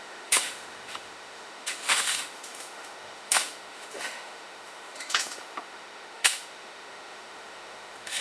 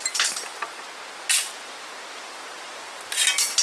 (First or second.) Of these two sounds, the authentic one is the second